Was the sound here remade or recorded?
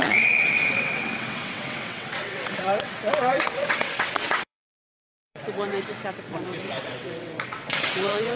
remade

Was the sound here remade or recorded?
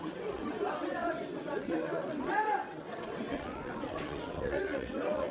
remade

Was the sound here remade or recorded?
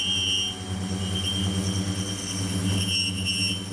recorded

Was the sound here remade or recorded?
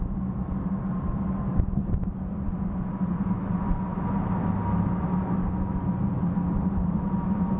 recorded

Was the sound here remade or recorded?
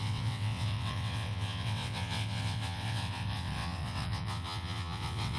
remade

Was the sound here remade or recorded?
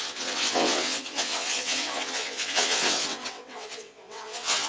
remade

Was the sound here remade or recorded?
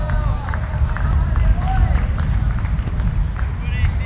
recorded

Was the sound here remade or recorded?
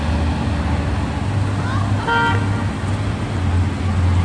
recorded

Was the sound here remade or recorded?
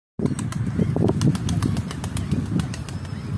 recorded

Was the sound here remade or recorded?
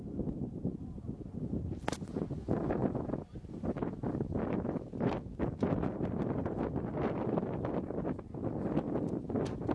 recorded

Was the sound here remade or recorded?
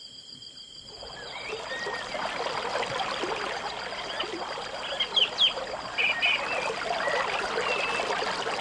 recorded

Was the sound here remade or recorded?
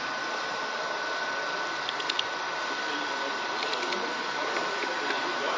recorded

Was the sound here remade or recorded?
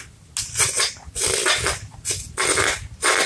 recorded